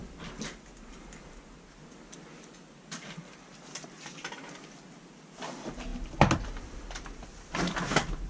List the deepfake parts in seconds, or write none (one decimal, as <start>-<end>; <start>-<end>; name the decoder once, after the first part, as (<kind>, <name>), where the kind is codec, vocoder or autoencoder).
none